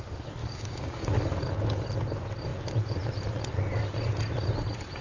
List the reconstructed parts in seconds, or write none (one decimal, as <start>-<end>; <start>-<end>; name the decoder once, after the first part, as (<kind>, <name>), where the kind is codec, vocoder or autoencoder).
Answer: 0.4-1.1 (codec, DAC)